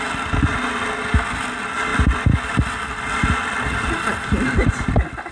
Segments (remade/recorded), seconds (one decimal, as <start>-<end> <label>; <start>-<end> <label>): 0.0-5.3 recorded